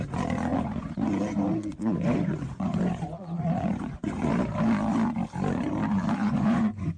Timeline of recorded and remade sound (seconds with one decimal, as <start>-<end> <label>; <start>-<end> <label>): 0.0-0.5 recorded; 0.5-4.3 remade; 4.3-6.2 recorded; 6.2-7.0 remade